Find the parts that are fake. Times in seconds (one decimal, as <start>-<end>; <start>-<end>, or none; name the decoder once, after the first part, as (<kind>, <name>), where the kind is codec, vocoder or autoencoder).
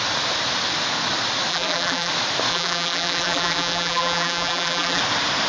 1.5-2.1 (vocoder, BigVGAN v2); 2.5-5.0